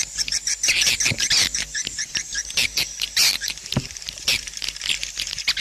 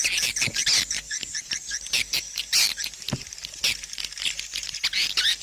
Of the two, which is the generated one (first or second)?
first